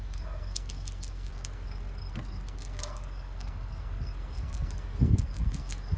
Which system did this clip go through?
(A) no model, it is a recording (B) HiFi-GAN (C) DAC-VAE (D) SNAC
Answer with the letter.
D